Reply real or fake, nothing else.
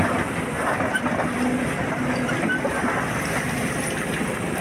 real